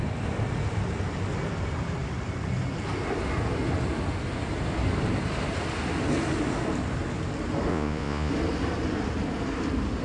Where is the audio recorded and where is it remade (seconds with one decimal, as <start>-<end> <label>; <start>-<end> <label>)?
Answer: 0.0-7.7 recorded; 7.7-8.3 remade; 8.3-10.0 recorded